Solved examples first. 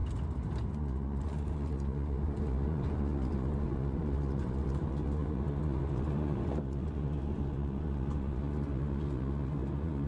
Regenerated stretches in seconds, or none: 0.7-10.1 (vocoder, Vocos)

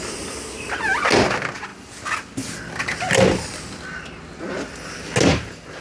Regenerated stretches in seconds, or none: none

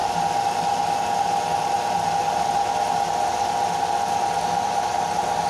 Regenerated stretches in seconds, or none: none